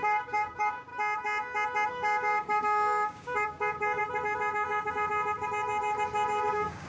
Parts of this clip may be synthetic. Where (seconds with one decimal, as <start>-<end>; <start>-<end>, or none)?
0.0-0.9; 1.9-4.0; 6.5-6.9